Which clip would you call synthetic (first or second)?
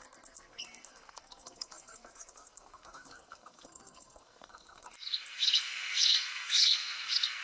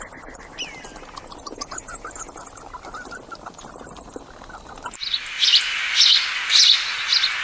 first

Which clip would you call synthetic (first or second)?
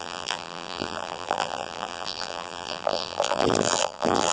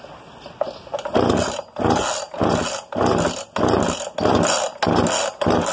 first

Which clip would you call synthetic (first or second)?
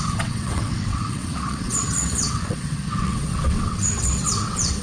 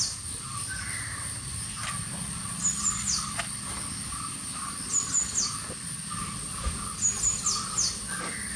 first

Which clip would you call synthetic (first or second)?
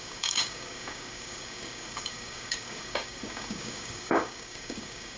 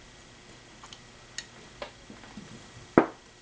first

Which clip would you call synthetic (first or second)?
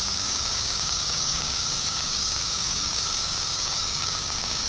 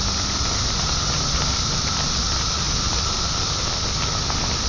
first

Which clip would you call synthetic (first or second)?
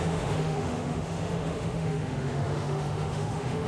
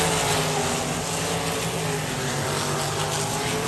first